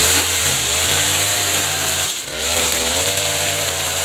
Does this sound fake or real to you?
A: fake